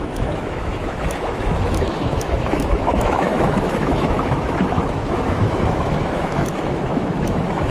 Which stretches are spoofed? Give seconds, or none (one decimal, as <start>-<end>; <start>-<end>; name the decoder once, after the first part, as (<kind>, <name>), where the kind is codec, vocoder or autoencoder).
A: 0.0-7.7 (autoencoder, DAC-VAE)